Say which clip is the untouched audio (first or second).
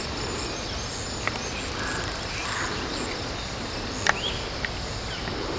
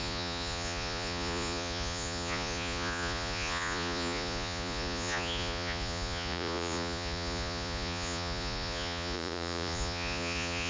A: first